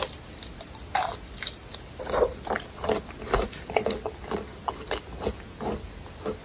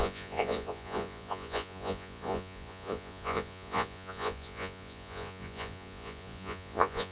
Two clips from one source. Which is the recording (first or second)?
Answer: first